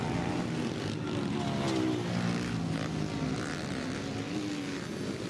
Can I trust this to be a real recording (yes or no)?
yes